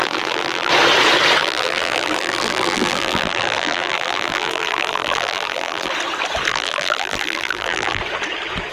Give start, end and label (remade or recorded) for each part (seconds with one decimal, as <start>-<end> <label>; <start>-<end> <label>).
0.0-0.7 remade; 0.7-1.4 recorded; 1.4-5.9 remade; 5.9-6.5 recorded; 6.5-8.0 remade; 8.0-8.7 recorded